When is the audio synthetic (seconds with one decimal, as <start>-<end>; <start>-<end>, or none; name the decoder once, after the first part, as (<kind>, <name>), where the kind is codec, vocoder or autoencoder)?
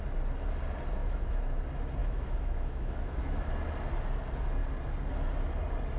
1.0-1.6 (autoencoder, DAC-VAE); 2.0-3.5